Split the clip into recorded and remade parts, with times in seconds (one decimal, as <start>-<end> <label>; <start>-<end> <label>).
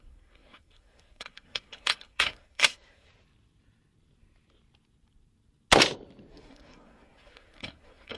0.0-3.1 remade; 3.1-6.3 recorded; 6.3-8.2 remade